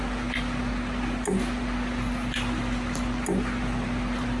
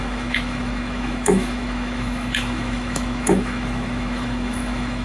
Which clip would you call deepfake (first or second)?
second